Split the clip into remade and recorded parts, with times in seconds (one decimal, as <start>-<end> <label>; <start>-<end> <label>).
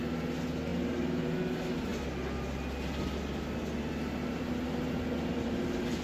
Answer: 0.0-6.0 recorded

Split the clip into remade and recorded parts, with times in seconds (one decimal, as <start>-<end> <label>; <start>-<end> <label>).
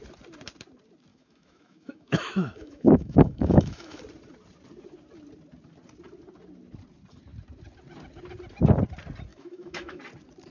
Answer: 0.0-1.1 recorded; 1.1-4.0 remade; 4.0-9.3 recorded; 9.3-10.0 remade; 10.0-10.5 recorded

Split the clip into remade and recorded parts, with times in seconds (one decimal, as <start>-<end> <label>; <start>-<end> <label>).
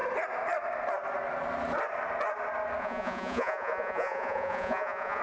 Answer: 0.0-2.8 recorded; 2.8-5.2 remade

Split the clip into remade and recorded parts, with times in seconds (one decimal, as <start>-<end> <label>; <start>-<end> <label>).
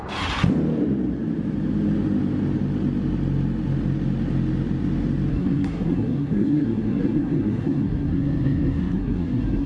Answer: 0.0-5.3 recorded; 5.3-9.7 remade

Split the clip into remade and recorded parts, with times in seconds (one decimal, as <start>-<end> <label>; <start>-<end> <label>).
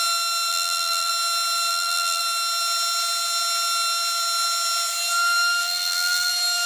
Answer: 0.0-0.5 recorded; 0.5-1.1 remade; 1.1-1.7 recorded; 1.7-2.2 remade; 2.2-5.6 recorded; 5.6-6.3 remade; 6.3-6.7 recorded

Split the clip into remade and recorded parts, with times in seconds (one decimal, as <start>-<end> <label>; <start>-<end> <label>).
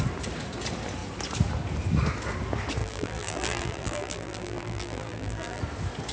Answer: 0.0-2.8 recorded; 2.8-5.6 remade; 5.6-6.1 recorded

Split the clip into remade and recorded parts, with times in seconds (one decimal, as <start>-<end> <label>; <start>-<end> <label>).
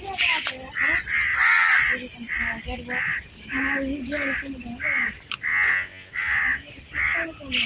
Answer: 0.0-5.5 recorded; 5.5-6.1 remade; 6.1-7.7 recorded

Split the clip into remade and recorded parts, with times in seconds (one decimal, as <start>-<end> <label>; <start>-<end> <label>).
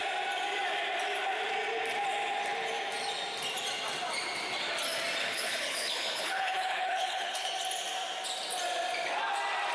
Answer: 0.0-5.2 recorded; 5.2-7.5 remade; 7.5-9.7 recorded